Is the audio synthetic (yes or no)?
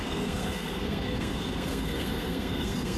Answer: yes